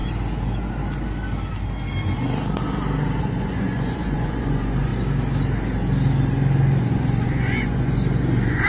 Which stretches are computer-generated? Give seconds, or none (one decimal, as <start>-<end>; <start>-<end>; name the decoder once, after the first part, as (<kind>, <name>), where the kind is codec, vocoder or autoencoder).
3.2-4.9 (vocoder, Vocos); 6.8-8.7